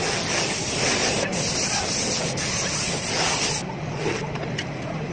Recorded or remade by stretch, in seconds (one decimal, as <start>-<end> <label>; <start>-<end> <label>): 0.0-5.1 recorded